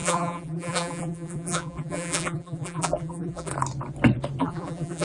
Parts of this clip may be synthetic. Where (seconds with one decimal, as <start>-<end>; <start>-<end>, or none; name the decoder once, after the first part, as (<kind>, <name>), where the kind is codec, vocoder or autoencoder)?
0.0-3.5 (vocoder, BigVGAN v2); 4.4-5.0